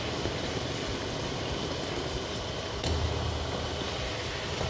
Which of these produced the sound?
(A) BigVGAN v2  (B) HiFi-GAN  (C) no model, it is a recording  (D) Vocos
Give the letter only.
C